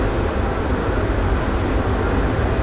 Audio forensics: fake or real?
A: real